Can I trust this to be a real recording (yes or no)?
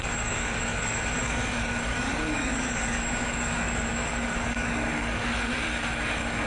no